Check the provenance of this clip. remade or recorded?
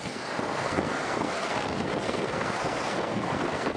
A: remade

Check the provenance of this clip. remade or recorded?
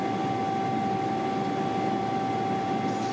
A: recorded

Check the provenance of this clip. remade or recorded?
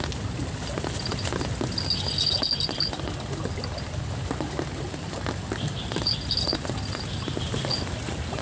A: recorded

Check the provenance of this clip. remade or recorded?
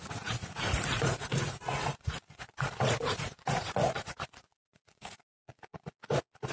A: remade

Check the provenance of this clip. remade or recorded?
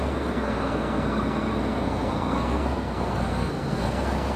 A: remade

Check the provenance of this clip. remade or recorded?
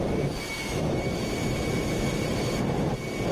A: remade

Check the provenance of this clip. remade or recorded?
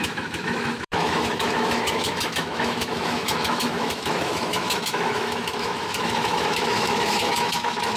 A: remade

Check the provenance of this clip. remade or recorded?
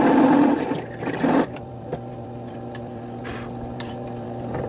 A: remade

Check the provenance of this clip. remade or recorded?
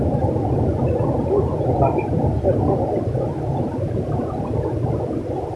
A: remade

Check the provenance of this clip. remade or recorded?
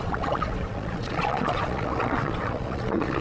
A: remade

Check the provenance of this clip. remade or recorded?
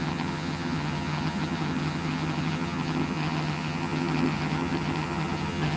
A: remade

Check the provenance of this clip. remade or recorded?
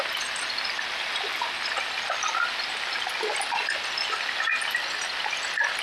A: recorded